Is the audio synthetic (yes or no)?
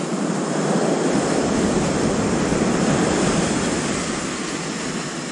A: no